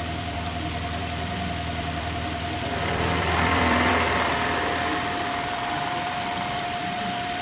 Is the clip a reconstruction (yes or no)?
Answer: yes